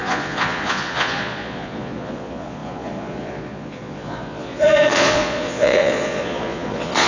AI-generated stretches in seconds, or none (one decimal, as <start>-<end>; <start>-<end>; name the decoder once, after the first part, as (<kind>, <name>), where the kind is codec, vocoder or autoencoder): 0.0-7.1 (vocoder, Vocos)